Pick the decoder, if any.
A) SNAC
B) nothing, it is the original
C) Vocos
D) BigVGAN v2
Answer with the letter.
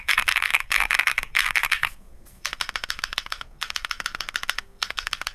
A